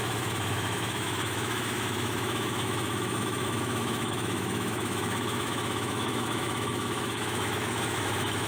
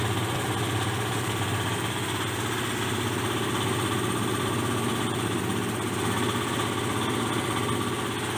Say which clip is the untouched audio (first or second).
second